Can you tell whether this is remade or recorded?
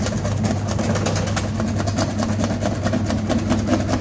recorded